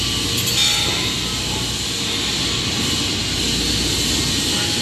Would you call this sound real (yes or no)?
yes